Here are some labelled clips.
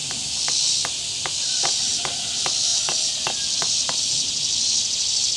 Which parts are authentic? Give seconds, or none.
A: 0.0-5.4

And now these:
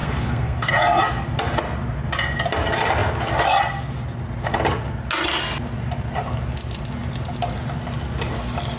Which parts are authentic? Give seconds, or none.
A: 0.7-8.8

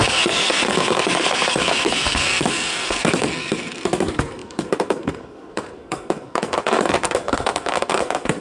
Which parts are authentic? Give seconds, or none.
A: none

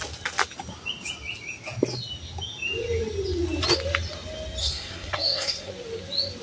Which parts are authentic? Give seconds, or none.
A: 0.0-4.6; 5.7-6.4

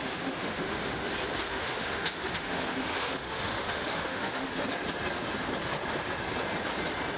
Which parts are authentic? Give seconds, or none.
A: 1.1-1.5; 4.5-7.2

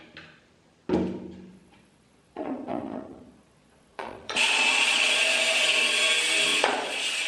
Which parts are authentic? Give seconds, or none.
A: 0.0-1.5; 5.2-6.5

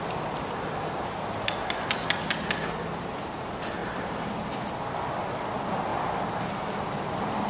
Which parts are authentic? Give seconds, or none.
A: 0.0-3.8; 4.4-7.5

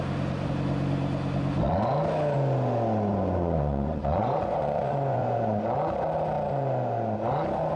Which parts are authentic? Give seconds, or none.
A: 0.0-3.1; 5.6-7.8